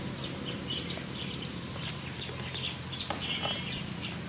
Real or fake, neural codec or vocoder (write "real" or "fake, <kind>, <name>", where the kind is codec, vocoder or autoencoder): real